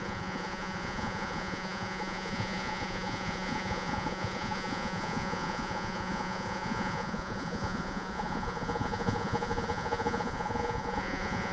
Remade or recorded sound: remade